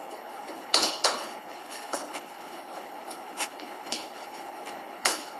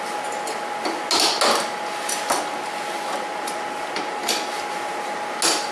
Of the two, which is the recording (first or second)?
second